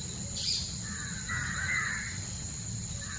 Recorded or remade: recorded